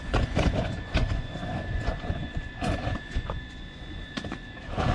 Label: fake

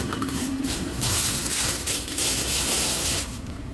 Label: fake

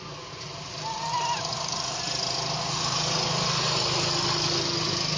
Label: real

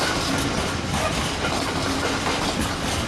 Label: real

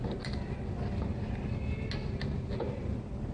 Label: real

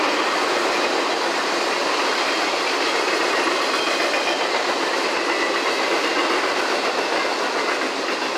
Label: real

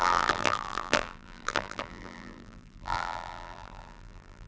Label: fake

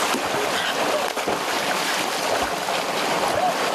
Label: real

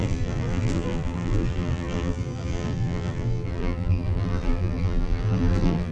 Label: fake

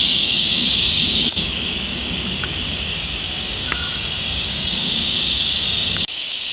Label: fake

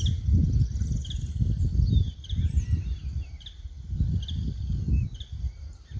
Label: real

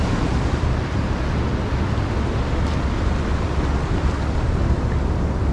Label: real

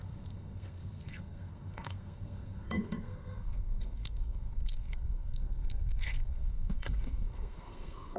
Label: fake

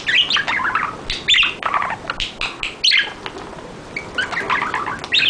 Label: real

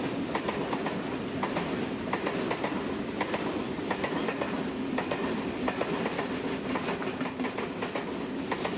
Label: real